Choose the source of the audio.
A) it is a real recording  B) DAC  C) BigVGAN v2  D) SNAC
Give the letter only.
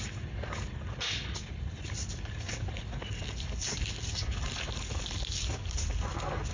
A